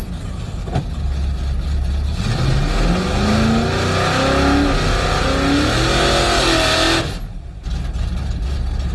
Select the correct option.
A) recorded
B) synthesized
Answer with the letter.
A